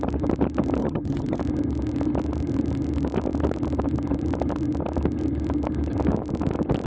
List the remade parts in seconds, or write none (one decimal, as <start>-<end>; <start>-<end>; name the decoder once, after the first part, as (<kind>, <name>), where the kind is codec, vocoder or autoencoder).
0.8-1.4 (vocoder, HiFi-GAN)